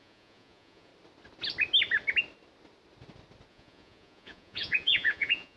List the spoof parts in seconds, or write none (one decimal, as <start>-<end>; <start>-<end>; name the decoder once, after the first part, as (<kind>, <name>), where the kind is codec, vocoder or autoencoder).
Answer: 0.0-0.9 (vocoder, Vocos); 3.5-5.6